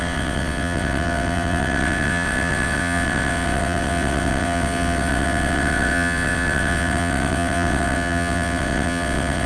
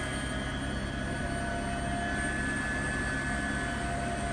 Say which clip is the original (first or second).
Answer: second